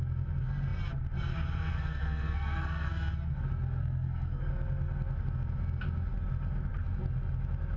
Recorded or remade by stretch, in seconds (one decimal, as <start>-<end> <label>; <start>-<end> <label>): 0.0-1.7 recorded; 1.7-2.9 remade; 2.9-3.8 recorded; 3.8-4.5 remade; 4.5-7.8 recorded